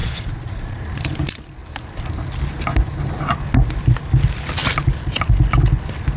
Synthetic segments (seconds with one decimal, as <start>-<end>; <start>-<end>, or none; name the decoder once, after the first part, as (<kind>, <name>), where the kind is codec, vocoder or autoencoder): 0.0-0.8 (vocoder, Vocos)